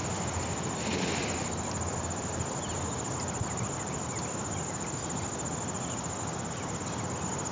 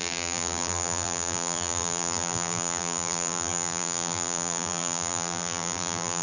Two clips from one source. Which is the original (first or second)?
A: first